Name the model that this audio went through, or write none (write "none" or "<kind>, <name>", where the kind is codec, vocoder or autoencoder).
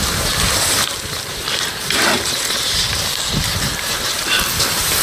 vocoder, BigVGAN v2